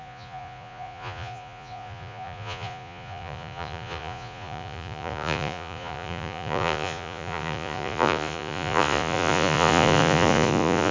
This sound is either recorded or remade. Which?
remade